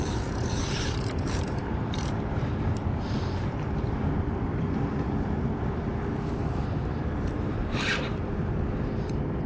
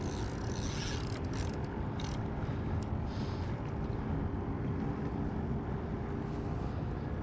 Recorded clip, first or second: second